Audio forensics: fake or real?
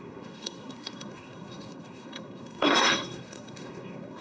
fake